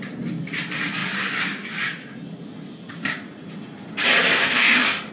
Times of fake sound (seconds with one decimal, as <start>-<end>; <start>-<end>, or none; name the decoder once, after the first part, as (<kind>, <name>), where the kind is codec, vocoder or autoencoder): 4.3-5.1 (autoencoder, DAC-VAE)